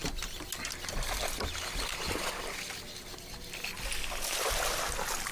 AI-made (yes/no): no